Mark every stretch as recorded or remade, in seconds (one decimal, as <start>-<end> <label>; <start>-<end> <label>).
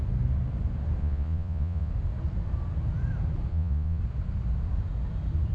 0.0-1.0 recorded; 1.0-1.9 remade; 1.9-3.5 recorded; 3.5-4.0 remade; 4.0-5.5 recorded